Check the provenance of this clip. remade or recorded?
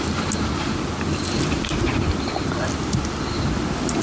recorded